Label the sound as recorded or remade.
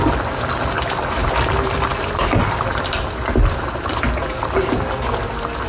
recorded